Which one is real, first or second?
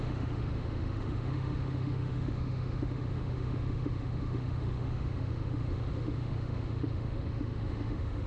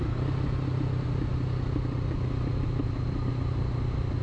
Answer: second